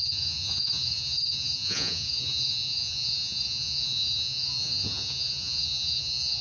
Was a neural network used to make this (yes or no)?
yes